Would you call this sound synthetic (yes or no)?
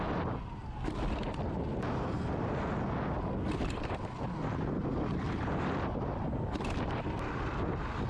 no